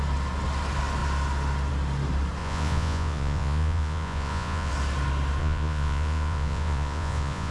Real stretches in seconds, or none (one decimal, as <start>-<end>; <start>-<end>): 0.0-2.4; 4.7-5.4